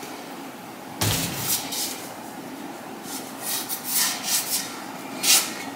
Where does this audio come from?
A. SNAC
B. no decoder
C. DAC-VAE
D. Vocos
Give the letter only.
B